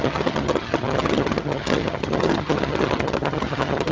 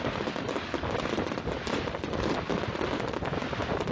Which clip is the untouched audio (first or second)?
second